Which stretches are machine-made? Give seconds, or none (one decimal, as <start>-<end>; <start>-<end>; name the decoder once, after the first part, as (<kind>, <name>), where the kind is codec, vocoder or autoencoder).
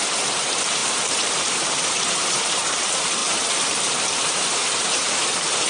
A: 0.0-5.7 (vocoder, BigVGAN v2)